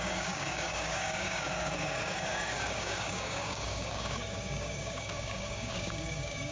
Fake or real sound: fake